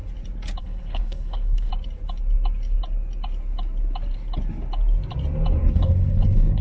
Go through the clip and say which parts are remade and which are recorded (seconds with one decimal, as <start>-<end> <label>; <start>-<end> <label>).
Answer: 0.0-0.6 recorded; 0.6-1.7 remade; 1.7-5.7 recorded; 5.7-6.6 remade